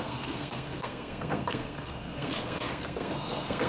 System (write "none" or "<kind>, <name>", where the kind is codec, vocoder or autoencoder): codec, SNAC